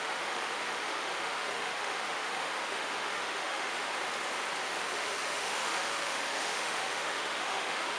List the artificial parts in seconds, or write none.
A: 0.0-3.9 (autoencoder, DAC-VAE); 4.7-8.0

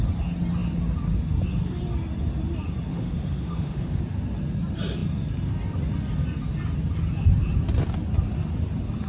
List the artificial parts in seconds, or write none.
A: 2.9-4.0 (autoencoder, DAC-VAE)